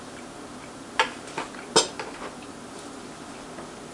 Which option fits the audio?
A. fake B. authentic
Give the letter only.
B